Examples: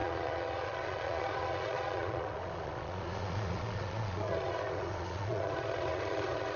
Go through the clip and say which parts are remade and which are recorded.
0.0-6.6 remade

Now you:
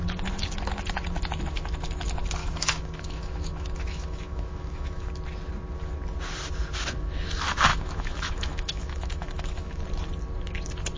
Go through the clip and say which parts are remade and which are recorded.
0.0-2.4 recorded; 2.4-5.1 remade; 5.1-7.7 recorded; 7.7-9.8 remade; 9.8-11.0 recorded

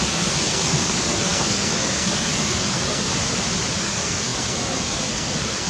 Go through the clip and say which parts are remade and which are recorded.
0.0-3.1 remade; 3.1-3.8 recorded; 3.8-5.7 remade

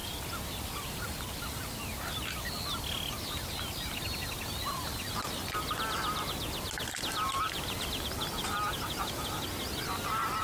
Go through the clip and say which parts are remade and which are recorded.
0.0-10.4 recorded

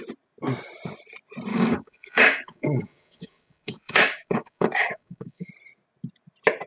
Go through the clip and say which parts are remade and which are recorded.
0.0-1.5 recorded; 1.5-5.5 remade; 5.5-6.7 recorded

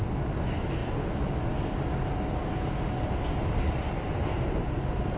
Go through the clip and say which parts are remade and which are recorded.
0.0-5.2 recorded